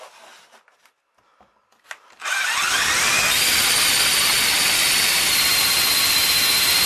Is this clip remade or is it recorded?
recorded